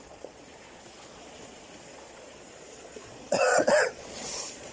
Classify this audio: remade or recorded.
remade